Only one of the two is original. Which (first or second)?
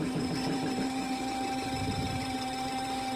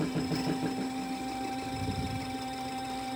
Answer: second